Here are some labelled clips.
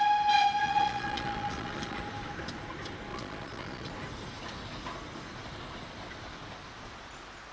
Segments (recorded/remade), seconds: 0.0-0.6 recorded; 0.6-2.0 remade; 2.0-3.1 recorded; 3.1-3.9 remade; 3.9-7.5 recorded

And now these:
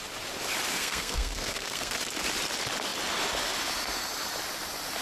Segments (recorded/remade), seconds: 0.0-0.7 recorded; 0.7-1.9 remade; 1.9-5.0 recorded

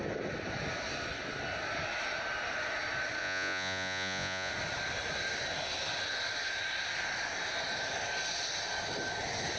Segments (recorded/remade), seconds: 0.0-3.2 recorded; 3.2-4.5 remade; 4.5-9.6 recorded

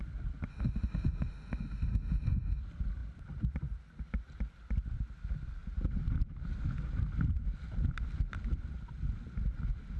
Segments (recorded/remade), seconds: 0.0-0.5 recorded; 0.5-2.6 remade; 2.6-10.0 recorded

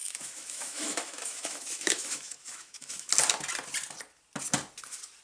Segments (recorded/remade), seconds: 0.0-3.1 remade; 3.1-5.2 recorded

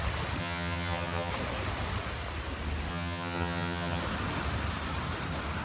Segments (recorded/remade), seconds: 0.0-0.4 recorded; 0.4-1.3 remade; 1.3-2.9 recorded; 2.9-4.0 remade; 4.0-5.6 recorded